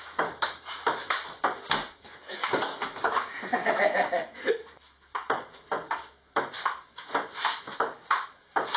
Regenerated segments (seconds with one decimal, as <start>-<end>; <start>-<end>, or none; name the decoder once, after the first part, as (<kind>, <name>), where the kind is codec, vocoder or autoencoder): 0.0-1.2 (autoencoder, DAC-VAE); 2.0-8.8